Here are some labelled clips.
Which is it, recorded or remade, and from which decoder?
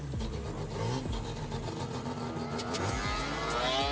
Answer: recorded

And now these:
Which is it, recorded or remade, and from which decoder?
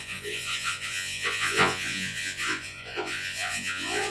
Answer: remade, vocoder, Vocos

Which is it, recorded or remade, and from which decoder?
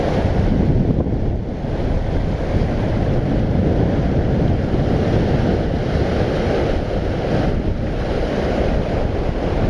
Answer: recorded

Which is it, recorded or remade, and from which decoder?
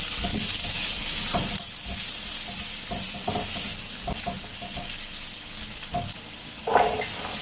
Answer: recorded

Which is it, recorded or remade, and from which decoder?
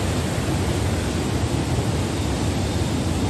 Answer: recorded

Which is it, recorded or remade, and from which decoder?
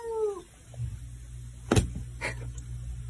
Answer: recorded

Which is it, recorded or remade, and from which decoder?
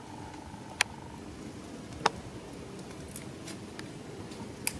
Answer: recorded